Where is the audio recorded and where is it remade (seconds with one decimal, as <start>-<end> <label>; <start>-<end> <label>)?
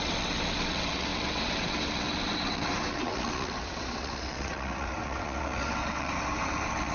0.0-6.9 remade